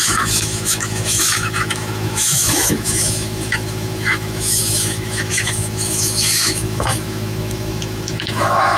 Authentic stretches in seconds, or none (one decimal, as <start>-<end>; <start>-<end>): none